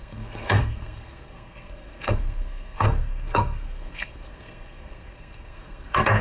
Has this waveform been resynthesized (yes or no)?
yes